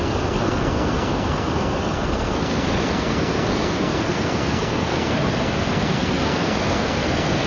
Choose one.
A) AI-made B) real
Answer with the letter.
A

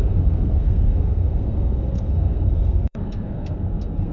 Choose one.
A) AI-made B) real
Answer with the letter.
A